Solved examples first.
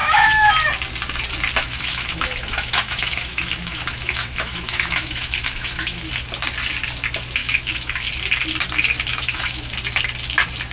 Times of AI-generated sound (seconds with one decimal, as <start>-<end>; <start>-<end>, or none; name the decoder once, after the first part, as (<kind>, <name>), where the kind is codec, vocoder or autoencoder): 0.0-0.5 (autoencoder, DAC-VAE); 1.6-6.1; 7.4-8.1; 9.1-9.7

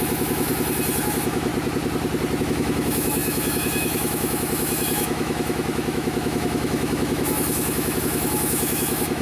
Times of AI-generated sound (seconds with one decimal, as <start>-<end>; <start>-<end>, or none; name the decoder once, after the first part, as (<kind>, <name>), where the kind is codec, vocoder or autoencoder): 0.0-0.5 (autoencoder, DAC-VAE); 1.0-1.5; 2.4-9.2

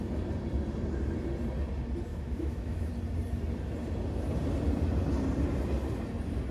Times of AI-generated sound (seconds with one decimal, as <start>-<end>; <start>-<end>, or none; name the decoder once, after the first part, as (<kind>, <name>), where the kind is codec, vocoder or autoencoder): 2.1-2.9 (autoencoder, DAC-VAE)

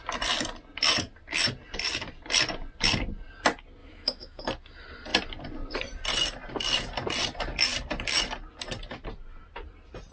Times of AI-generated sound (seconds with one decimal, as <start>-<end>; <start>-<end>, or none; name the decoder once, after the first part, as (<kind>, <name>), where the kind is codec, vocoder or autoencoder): 3.8-4.4 (autoencoder, DAC-VAE)

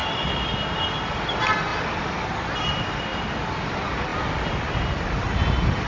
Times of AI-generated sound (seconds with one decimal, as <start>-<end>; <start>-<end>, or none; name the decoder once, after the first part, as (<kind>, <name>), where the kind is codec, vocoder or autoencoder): none